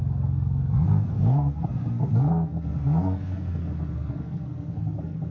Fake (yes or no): yes